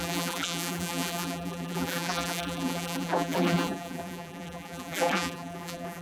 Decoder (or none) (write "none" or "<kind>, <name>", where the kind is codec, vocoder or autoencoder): vocoder, BigVGAN v2